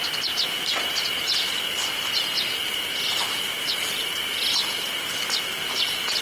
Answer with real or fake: real